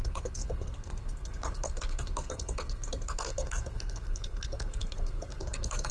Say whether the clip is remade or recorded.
remade